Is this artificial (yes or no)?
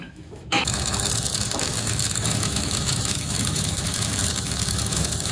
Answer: yes